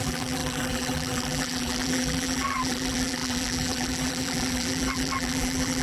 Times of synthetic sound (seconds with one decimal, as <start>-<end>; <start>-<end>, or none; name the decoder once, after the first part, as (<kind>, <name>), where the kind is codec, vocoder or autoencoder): 0.0-5.8 (vocoder, BigVGAN v2)